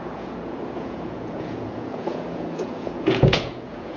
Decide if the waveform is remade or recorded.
remade